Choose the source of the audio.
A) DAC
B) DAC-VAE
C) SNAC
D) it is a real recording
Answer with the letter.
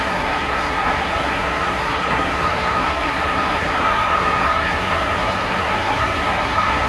C